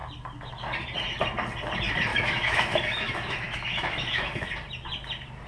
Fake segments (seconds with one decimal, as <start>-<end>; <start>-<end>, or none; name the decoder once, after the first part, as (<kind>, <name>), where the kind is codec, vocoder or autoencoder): 2.1-4.5 (autoencoder, DAC-VAE)